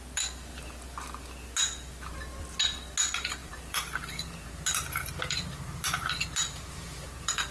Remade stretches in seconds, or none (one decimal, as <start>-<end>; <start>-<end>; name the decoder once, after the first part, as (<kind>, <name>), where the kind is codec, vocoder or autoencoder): 3.4-7.5 (vocoder, BigVGAN v2)

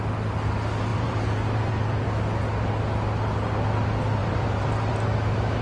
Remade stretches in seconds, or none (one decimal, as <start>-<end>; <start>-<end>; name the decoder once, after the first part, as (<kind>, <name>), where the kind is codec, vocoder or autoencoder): 0.9-1.7 (vocoder, BigVGAN v2); 4.2-4.9